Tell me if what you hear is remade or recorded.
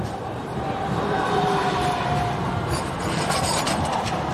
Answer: remade